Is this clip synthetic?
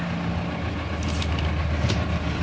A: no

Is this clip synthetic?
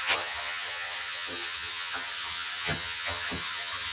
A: yes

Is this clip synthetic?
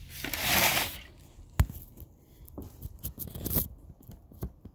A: no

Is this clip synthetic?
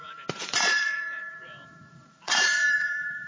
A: yes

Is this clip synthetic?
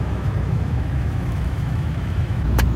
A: yes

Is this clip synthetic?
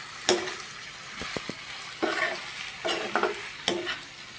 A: no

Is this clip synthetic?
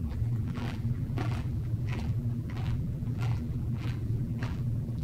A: yes